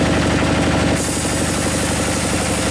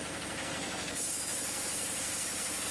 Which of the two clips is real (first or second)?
first